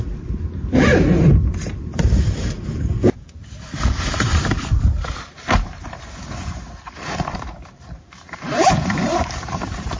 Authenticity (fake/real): fake